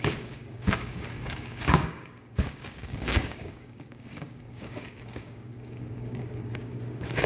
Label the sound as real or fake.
fake